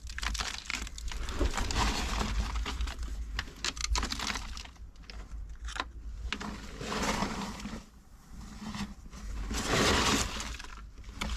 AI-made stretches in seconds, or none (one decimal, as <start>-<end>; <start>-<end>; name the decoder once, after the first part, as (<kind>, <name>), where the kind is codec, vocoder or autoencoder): 7.2-7.8 (vocoder, BigVGAN v2)